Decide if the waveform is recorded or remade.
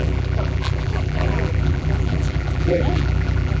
remade